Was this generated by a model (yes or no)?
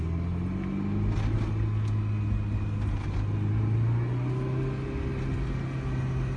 no